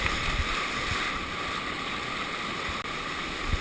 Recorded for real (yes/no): yes